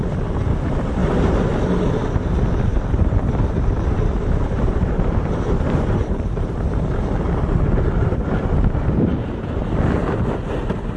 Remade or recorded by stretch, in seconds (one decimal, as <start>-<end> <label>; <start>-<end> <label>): 0.0-2.7 recorded; 2.7-7.0 remade; 7.0-9.1 recorded; 9.1-9.7 remade; 9.7-11.0 recorded